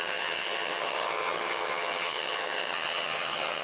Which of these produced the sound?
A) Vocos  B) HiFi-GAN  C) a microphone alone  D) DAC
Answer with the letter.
B